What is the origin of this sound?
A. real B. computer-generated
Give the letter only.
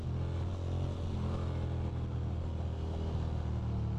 A